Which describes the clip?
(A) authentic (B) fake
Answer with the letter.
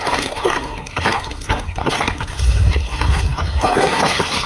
B